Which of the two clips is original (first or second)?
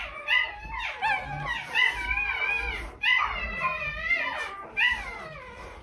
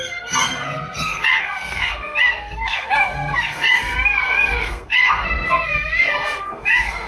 first